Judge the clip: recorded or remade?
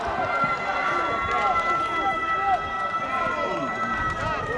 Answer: recorded